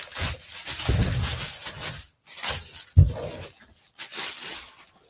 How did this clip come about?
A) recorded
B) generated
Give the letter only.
A